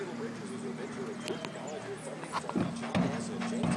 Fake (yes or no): no